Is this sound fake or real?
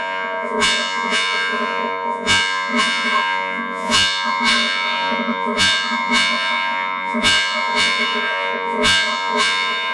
fake